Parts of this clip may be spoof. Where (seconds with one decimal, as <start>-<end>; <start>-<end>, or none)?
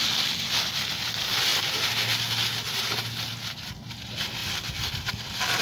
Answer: none